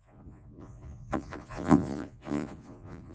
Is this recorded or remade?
remade